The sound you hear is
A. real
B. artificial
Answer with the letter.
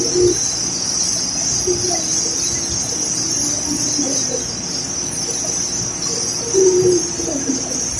A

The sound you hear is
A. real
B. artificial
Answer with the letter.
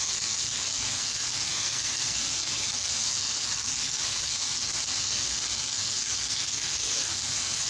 B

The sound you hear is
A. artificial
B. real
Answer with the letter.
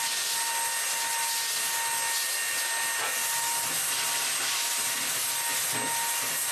B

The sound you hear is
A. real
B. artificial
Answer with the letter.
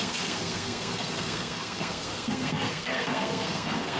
B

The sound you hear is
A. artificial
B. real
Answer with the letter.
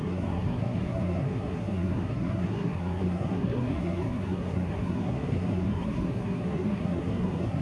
A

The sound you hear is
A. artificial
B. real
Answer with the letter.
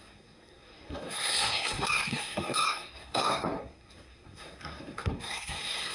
A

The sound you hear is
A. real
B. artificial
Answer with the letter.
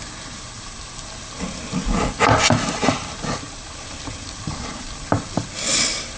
A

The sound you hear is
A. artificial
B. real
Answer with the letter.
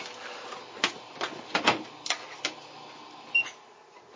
B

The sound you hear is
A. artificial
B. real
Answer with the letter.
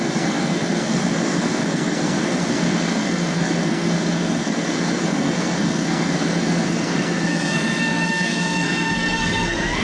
A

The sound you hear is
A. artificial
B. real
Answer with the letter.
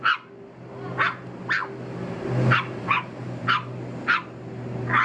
B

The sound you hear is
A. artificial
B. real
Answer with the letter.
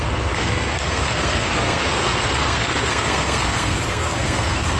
A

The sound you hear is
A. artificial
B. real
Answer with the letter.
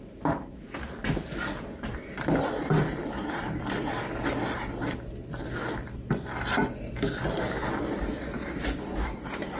B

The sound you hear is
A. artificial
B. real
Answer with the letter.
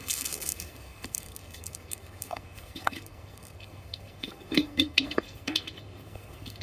A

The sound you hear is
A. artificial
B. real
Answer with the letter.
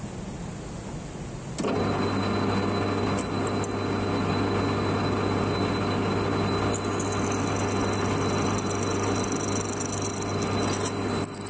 B